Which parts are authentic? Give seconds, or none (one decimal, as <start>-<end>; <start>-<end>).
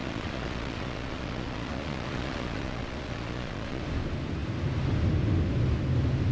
3.8-6.3